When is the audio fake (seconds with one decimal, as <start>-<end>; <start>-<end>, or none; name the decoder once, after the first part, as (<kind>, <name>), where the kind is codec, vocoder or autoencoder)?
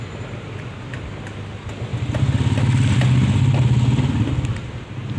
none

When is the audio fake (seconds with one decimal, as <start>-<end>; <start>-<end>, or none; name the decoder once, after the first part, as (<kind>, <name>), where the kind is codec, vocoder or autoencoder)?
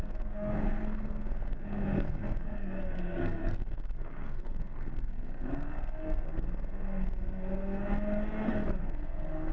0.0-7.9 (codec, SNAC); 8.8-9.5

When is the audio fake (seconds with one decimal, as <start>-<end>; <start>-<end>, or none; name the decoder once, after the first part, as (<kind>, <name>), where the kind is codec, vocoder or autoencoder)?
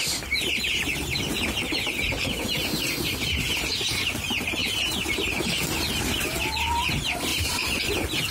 4.6-6.2 (vocoder, BigVGAN v2); 7.3-7.8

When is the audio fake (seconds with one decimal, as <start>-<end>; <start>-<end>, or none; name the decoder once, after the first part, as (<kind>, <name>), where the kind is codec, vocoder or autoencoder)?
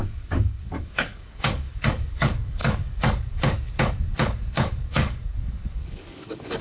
0.0-6.6 (codec, DAC)